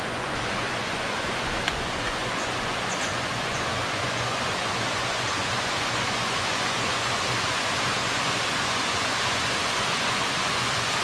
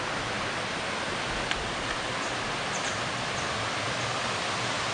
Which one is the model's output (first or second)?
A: first